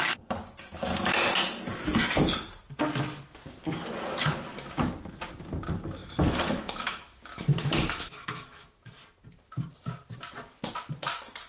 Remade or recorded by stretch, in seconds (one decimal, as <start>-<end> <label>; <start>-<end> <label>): 0.0-6.0 recorded; 6.0-8.9 remade; 8.9-11.5 recorded